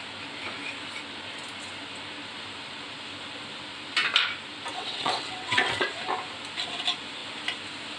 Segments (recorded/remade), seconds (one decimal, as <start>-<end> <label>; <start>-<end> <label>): 0.0-4.7 recorded; 4.7-5.9 remade; 5.9-8.0 recorded